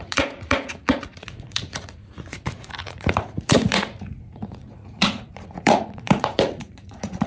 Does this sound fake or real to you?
fake